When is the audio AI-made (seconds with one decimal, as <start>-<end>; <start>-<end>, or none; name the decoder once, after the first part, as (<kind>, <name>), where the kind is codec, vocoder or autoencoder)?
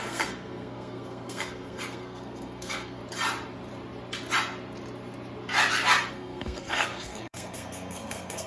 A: 0.0-3.0 (codec, SNAC); 6.1-8.5